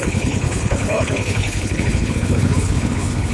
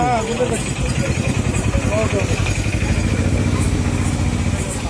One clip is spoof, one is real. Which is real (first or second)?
second